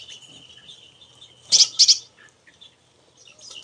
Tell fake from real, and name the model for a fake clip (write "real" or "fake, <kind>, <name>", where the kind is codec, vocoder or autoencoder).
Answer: real